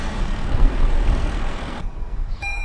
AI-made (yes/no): yes